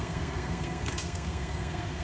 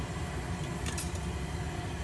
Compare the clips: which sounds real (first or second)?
second